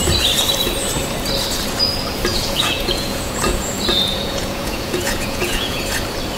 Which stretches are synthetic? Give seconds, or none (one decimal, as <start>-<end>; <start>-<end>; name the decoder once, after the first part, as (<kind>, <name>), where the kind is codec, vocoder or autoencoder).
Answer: 2.3-5.8 (vocoder, Vocos)